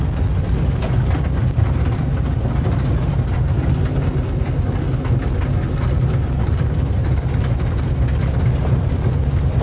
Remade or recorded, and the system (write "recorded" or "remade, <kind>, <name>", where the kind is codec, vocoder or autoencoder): recorded